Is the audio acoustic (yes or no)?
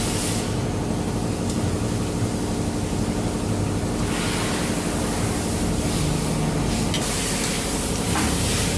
yes